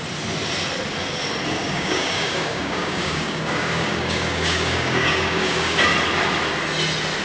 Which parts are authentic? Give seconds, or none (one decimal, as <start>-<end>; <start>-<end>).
0.0-1.6; 5.9-7.2